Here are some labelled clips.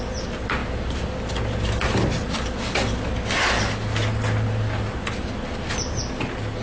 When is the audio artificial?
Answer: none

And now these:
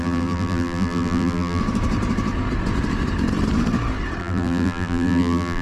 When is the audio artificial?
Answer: 0.0-1.6 (vocoder, BigVGAN v2); 4.2-5.6

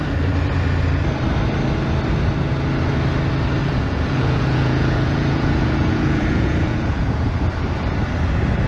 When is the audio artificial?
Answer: 3.6-7.3 (vocoder, Vocos)

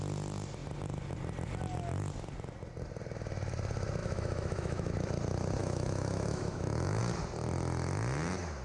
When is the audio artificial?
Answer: 4.0-4.9 (autoencoder, DAC-VAE); 5.6-7.0